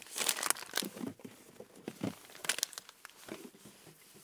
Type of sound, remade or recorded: recorded